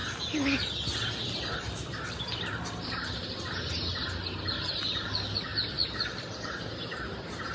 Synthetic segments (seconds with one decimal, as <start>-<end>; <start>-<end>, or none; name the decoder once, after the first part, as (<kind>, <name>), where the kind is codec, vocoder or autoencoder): none